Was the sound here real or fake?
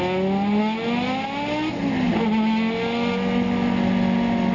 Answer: real